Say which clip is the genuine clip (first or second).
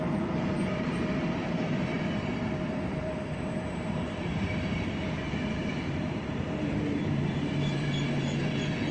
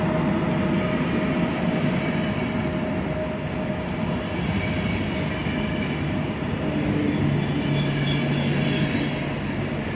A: second